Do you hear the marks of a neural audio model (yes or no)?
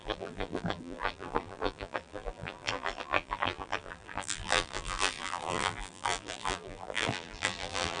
yes